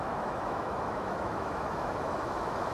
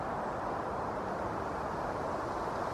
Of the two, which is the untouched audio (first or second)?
second